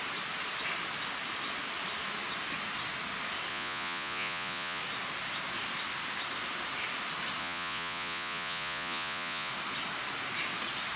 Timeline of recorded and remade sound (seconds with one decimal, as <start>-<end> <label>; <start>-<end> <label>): 0.0-3.5 recorded; 3.5-4.8 remade; 4.8-7.4 recorded; 7.4-9.5 remade; 9.5-11.0 recorded